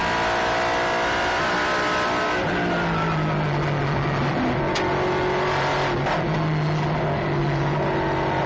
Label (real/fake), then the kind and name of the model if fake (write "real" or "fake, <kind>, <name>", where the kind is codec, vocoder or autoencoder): real